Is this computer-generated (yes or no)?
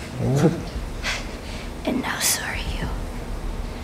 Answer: no